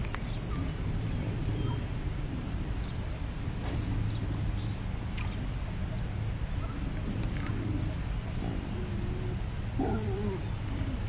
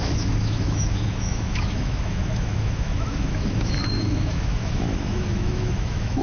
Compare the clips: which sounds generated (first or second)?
second